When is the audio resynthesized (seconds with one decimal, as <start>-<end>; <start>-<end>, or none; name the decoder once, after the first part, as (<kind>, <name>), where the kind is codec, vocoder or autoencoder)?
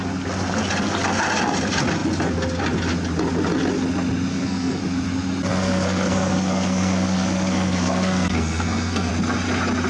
4.3-4.8 (codec, SNAC); 5.5-9.1